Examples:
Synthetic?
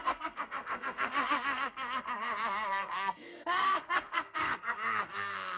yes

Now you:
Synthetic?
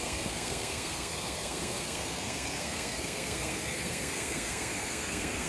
yes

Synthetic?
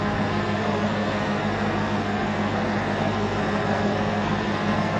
yes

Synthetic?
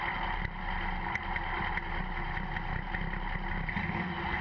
no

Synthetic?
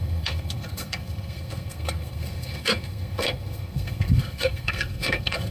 yes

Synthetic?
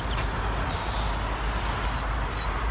no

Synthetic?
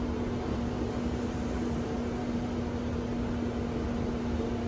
no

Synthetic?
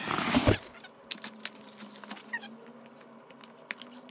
no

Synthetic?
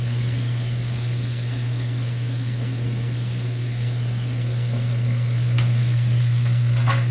yes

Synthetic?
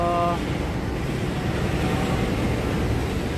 no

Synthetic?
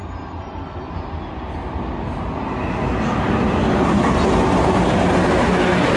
no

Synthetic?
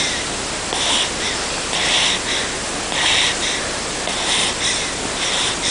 no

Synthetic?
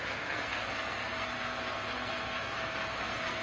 yes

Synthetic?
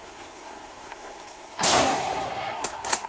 yes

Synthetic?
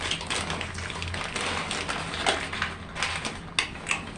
no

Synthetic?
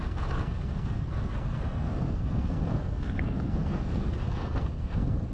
yes